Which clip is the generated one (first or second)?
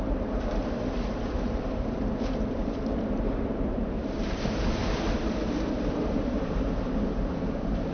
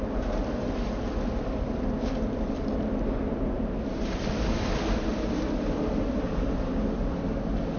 first